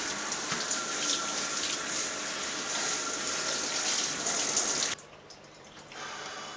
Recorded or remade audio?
remade